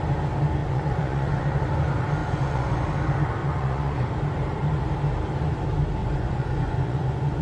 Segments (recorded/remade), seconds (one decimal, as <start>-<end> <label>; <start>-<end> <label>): 0.0-0.6 recorded; 0.6-1.6 remade; 1.6-2.2 recorded; 2.2-2.8 remade; 2.8-3.4 recorded; 3.4-4.1 remade; 4.1-6.0 recorded; 6.0-7.4 remade